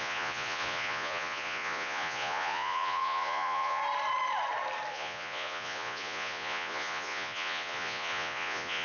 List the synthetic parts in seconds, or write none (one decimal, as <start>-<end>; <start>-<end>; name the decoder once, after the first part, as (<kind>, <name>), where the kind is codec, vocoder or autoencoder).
0.0-3.8 (vocoder, Vocos); 4.9-8.8